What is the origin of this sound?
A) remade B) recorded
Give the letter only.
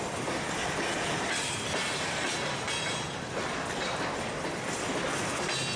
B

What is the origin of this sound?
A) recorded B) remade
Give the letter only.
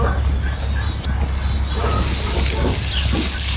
A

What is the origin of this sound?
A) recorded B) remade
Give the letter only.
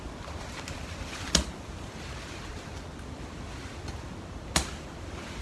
B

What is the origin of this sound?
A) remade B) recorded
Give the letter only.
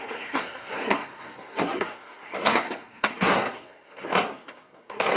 A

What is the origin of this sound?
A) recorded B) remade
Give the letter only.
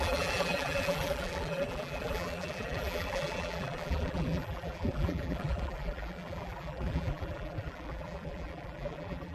B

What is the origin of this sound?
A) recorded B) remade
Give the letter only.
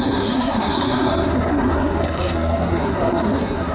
B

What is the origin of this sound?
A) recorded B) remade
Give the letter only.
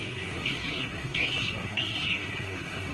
B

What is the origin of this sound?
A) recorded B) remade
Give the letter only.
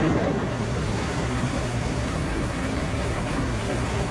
B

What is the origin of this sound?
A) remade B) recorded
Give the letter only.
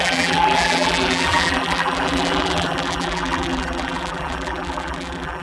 A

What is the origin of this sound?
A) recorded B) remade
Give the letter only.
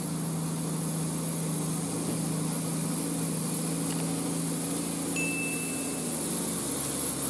A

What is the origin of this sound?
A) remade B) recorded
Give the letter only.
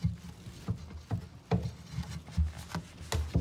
B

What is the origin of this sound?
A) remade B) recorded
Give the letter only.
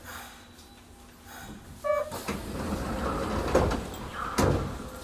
B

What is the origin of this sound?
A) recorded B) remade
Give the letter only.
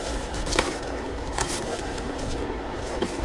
B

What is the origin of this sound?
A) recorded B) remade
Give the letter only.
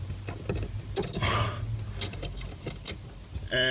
A